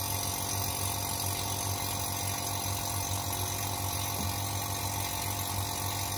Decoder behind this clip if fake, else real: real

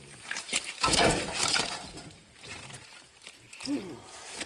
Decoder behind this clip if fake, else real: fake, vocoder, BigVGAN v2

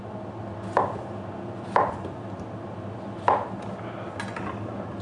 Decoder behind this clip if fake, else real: real